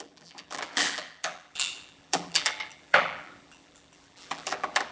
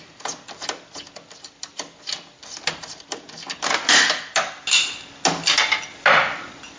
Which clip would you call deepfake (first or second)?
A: first